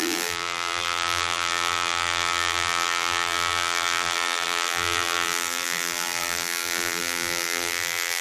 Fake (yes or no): yes